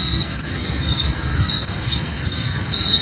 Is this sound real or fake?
fake